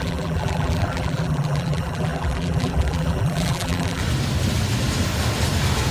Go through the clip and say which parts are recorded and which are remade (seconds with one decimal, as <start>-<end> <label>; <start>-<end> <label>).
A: 0.0-4.0 remade; 4.0-5.9 recorded